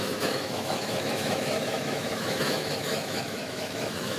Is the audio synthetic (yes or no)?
yes